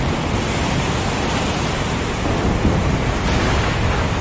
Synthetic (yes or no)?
no